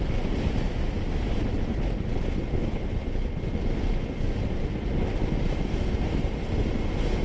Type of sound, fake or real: real